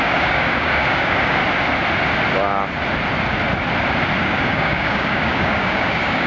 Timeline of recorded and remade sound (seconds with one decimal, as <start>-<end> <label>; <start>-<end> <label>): 0.0-1.4 remade; 1.4-4.2 recorded; 4.2-6.3 remade